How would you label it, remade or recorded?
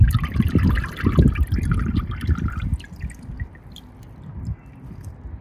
recorded